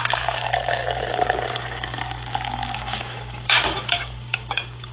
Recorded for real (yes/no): no